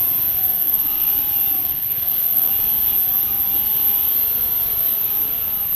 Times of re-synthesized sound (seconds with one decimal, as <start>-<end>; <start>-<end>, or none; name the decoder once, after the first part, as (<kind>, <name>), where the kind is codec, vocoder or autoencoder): 0.4-1.1 (codec, SNAC); 1.6-2.5